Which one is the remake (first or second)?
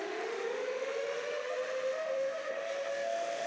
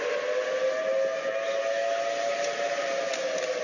first